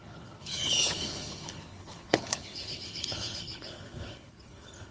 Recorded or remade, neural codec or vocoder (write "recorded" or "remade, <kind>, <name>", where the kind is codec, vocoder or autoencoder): remade, codec, HILCodec